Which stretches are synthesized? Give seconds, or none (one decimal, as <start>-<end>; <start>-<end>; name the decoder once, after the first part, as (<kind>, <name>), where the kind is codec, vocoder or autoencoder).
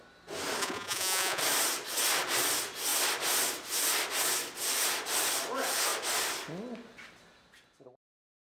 0.6-1.4 (vocoder, Vocos)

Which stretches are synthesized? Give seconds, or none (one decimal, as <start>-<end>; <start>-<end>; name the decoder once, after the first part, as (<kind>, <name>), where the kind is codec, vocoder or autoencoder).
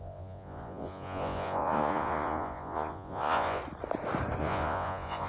0.0-3.6 (vocoder, Vocos); 4.4-5.3